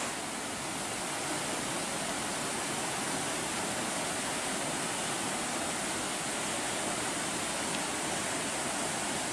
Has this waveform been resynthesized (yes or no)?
no